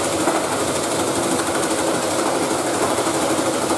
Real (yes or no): yes